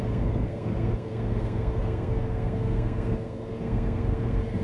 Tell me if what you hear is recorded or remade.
remade